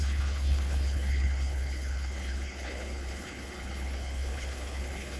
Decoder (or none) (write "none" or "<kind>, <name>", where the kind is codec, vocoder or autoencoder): codec, HILCodec